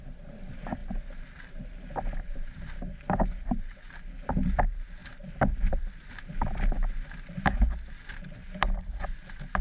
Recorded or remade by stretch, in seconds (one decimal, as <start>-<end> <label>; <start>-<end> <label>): 0.0-9.6 recorded